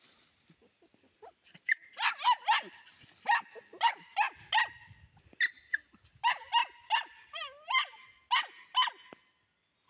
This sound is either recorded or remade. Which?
recorded